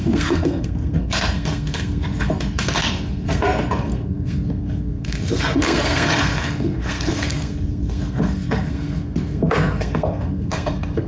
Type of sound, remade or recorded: remade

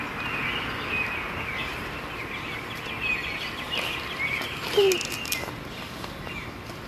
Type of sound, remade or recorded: recorded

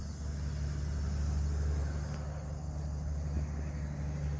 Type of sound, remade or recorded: recorded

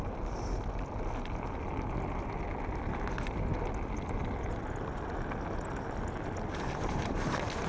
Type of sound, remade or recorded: recorded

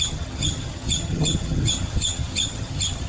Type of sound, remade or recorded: remade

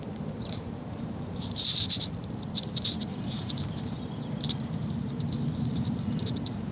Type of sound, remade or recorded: remade